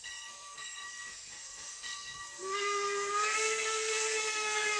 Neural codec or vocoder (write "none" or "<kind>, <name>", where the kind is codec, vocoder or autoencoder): codec, SNAC